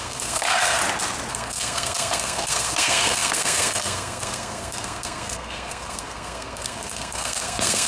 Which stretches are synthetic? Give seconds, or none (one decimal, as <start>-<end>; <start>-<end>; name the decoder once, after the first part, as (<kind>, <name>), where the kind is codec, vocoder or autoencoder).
0.0-0.8 (codec, SNAC); 1.3-7.9